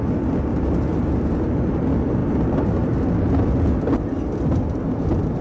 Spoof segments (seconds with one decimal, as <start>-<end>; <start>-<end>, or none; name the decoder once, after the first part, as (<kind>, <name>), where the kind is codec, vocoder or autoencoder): none